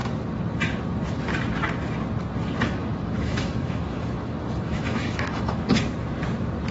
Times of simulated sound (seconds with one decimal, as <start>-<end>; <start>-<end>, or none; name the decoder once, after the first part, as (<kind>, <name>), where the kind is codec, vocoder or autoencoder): 2.8-5.8 (autoencoder, DAC-VAE)